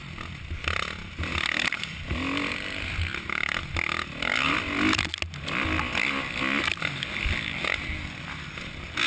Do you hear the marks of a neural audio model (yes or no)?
no